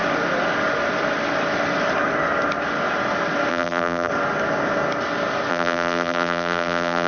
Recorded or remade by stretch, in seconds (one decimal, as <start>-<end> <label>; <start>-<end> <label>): 0.0-3.5 recorded; 3.5-4.1 remade; 4.1-5.5 recorded; 5.5-7.1 remade